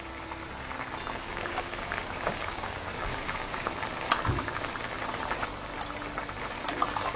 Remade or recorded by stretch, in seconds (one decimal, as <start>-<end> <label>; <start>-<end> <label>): 0.0-1.2 recorded; 1.2-3.7 remade; 3.7-7.2 recorded